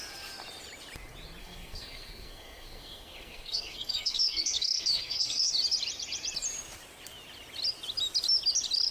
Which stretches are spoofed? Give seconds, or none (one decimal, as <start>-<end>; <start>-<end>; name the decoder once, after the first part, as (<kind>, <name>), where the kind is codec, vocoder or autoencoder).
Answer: 1.4-5.5 (codec, SNAC)